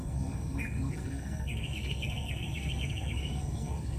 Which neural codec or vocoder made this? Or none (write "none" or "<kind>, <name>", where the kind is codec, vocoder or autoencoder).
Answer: codec, SNAC